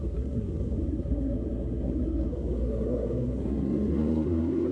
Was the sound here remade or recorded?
remade